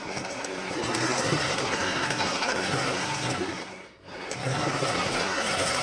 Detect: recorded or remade remade